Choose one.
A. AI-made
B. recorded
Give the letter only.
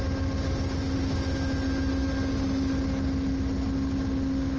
B